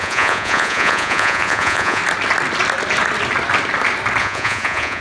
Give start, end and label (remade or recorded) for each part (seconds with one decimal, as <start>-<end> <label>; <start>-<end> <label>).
0.0-2.0 remade; 2.0-4.2 recorded; 4.2-5.0 remade